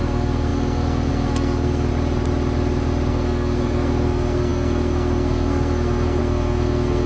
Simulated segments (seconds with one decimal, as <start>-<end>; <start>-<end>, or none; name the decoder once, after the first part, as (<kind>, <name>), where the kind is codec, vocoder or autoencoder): 0.0-1.9 (codec, SNAC); 3.1-7.1